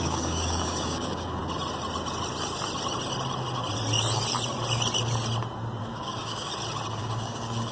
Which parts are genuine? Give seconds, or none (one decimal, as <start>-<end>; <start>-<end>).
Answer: 1.4-5.8; 6.5-7.0